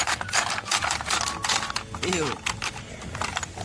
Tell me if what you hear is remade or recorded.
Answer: recorded